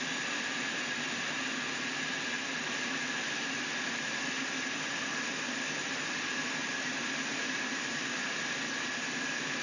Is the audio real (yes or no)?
yes